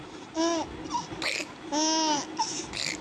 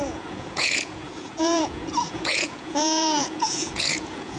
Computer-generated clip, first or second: second